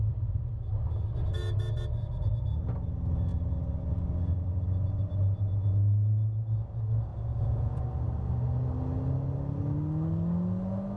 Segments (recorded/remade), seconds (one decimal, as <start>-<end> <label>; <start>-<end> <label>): 0.0-7.1 recorded; 7.1-7.8 remade; 7.8-11.0 recorded